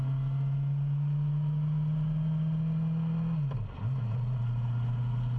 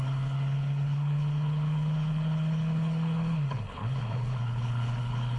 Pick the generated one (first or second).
second